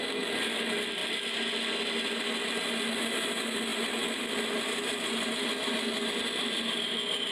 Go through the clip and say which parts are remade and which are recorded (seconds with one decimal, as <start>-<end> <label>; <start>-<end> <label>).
0.0-7.3 recorded